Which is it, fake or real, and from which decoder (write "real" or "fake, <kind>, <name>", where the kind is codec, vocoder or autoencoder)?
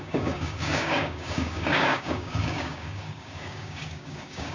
fake, codec, DAC